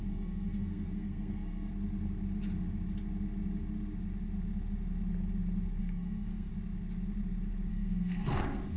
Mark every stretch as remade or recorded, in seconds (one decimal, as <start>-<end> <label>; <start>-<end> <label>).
0.0-1.7 remade; 1.7-5.8 recorded; 5.8-6.5 remade; 6.5-7.7 recorded; 7.7-8.8 remade